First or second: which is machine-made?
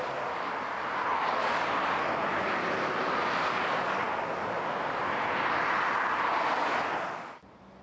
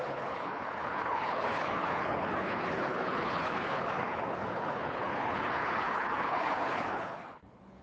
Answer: second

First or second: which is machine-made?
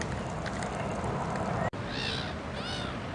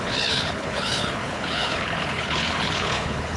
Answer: second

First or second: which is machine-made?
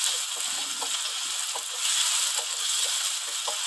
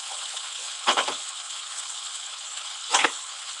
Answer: second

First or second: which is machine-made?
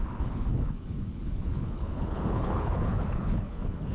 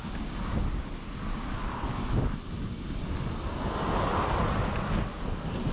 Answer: first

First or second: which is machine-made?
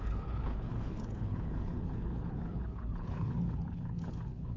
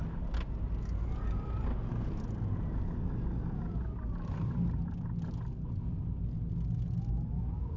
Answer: first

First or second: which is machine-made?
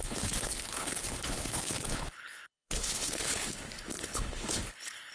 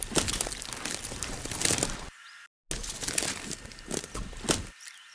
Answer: first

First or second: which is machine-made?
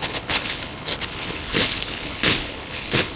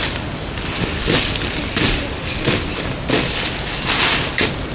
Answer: first